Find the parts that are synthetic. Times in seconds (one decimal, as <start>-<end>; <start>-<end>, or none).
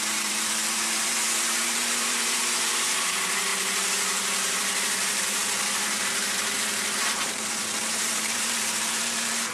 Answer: 0.0-9.5